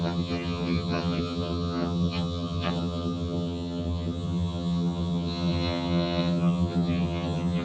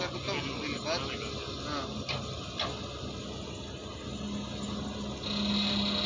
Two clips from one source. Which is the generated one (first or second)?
first